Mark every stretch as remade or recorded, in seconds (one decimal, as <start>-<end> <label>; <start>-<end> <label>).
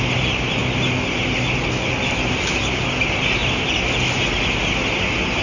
0.0-5.4 recorded